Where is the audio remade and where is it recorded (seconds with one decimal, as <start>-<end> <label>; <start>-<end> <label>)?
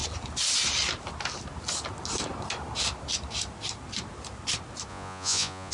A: 0.0-4.9 recorded; 4.9-5.7 remade